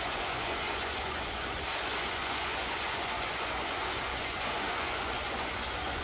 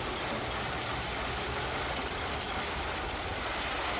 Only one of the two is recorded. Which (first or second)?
second